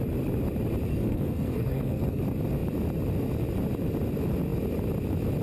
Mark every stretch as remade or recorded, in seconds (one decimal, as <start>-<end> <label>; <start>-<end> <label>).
0.0-0.9 recorded; 0.9-2.2 remade; 2.2-5.4 recorded